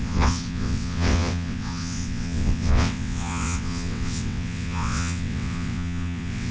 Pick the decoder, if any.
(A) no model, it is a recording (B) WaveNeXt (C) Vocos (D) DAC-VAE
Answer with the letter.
B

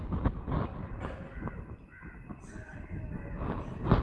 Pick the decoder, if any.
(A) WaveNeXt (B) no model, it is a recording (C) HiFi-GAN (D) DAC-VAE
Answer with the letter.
B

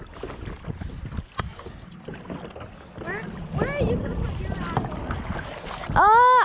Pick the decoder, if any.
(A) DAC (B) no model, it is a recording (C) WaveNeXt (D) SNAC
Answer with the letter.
B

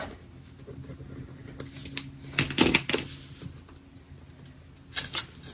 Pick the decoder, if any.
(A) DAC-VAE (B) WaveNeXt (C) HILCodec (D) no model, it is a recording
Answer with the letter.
D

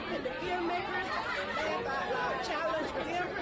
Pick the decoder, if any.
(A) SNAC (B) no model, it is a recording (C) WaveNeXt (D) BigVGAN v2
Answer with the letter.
B